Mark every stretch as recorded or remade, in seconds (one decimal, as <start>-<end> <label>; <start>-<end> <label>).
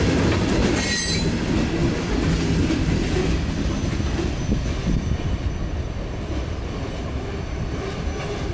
0.0-8.5 recorded